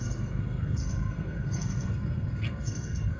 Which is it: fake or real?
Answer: fake